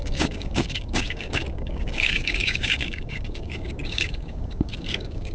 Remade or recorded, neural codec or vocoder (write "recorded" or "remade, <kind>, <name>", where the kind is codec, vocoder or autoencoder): remade, codec, DAC